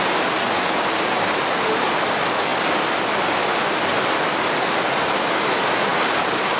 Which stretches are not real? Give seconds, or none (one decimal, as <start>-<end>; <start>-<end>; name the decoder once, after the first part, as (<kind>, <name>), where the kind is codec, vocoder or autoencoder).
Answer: none